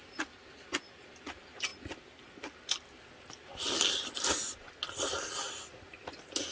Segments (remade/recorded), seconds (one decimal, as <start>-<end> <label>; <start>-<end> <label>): 0.0-6.5 recorded